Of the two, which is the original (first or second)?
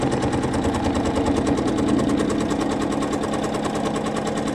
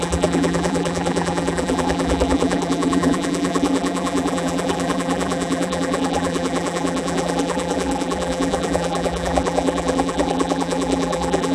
first